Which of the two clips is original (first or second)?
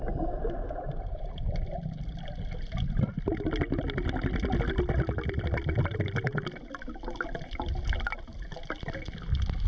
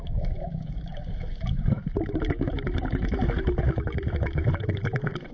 first